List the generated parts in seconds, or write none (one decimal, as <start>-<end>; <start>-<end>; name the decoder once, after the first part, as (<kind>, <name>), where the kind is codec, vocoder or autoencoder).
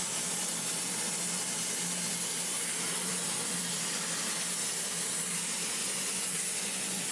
5.8-7.1 (vocoder, Vocos)